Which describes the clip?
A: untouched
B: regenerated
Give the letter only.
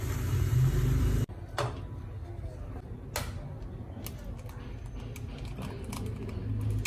A